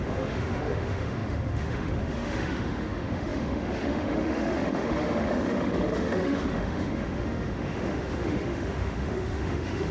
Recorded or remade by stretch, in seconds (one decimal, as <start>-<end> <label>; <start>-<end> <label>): 0.0-9.9 remade